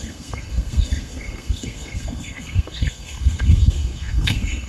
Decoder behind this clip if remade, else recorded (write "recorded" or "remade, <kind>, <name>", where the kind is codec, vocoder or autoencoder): remade, codec, SNAC